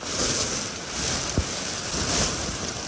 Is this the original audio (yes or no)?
yes